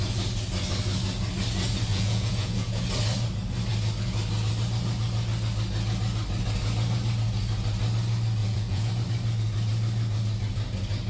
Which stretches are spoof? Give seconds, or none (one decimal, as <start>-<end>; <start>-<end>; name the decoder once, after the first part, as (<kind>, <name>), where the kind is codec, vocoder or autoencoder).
1.9-2.8 (vocoder, Vocos); 8.4-8.9

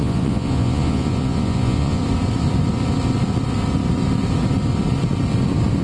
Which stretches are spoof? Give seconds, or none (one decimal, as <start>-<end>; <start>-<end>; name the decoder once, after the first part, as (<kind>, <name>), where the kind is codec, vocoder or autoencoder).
0.0-2.0 (vocoder, Vocos)

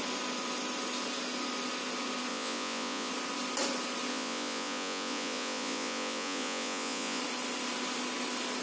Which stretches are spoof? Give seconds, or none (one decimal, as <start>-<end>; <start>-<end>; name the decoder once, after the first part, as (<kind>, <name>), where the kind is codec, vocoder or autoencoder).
2.3-3.1 (vocoder, Vocos); 4.1-7.2

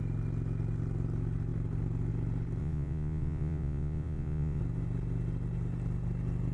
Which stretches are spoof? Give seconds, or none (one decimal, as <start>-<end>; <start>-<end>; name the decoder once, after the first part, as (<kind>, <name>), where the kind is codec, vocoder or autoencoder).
2.6-4.6 (vocoder, Vocos)